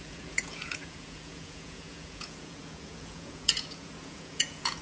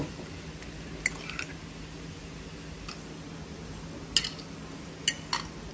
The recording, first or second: second